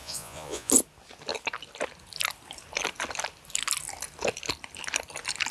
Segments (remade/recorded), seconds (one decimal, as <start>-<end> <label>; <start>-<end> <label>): 0.0-0.7 remade; 0.7-5.5 recorded